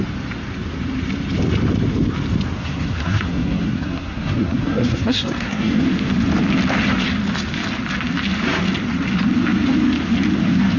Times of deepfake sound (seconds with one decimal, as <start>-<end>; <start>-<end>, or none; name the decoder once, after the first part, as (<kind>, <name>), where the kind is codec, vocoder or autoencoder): 2.6-5.8 (codec, SNAC)